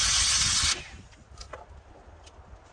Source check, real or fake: real